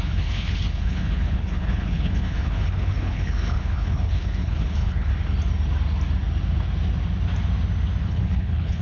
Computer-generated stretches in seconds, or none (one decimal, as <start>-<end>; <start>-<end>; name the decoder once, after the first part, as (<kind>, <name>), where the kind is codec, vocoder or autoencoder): 0.0-5.1 (codec, HILCodec); 8.0-8.8